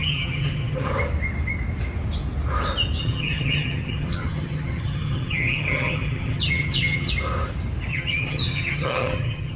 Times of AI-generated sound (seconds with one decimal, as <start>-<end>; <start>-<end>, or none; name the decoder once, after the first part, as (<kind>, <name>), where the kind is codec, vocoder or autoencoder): 0.0-0.9 (vocoder, HiFi-GAN); 3.0-7.1; 7.9-9.6